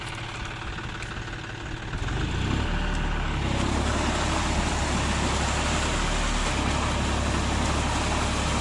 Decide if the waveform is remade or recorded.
recorded